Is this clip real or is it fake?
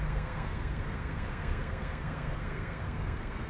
fake